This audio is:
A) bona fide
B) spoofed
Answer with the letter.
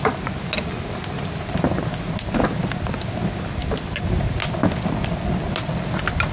A